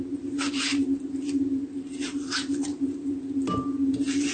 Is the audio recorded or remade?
recorded